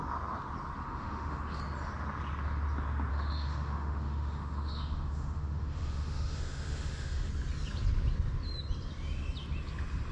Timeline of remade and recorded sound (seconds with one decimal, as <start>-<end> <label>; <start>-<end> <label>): 0.0-0.8 recorded; 0.8-1.6 remade; 1.6-3.1 recorded; 3.1-7.3 remade; 7.3-10.1 recorded